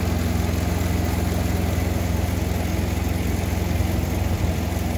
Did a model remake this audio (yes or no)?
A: no